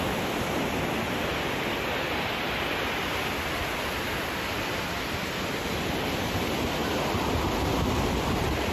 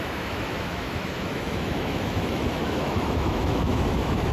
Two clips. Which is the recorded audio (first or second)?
first